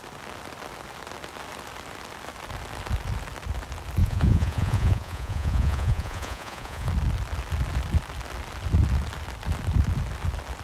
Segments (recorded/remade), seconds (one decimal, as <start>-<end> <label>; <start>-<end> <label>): 0.0-4.0 recorded; 4.0-6.9 remade; 6.9-10.6 recorded

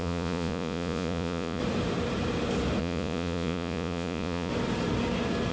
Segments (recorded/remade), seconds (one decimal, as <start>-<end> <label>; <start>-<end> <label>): 0.0-1.6 remade; 1.6-2.8 recorded; 2.8-4.5 remade; 4.5-5.5 recorded

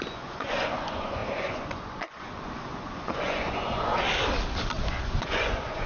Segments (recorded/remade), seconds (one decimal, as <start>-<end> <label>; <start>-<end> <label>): 0.0-3.9 remade; 3.9-4.9 recorded; 4.9-5.9 remade

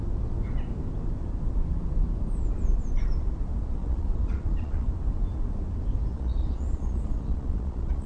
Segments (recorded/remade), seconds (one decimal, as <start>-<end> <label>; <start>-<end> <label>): 0.0-3.8 recorded; 3.8-4.9 remade; 4.9-6.1 recorded; 6.1-8.1 remade

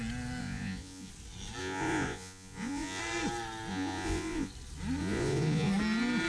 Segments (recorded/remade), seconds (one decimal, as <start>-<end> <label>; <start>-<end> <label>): 0.0-0.4 recorded; 0.4-1.1 remade; 1.1-1.6 recorded; 1.6-3.0 remade; 3.0-3.7 recorded; 3.7-4.5 remade; 4.5-5.0 recorded; 5.0-5.7 remade; 5.7-6.3 recorded

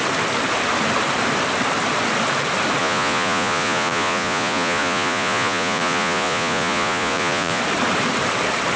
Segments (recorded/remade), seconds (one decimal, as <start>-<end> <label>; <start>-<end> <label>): 0.0-2.8 recorded; 2.8-7.6 remade; 7.6-8.8 recorded